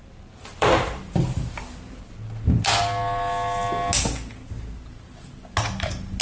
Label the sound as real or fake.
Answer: real